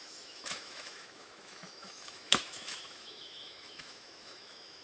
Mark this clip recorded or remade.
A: remade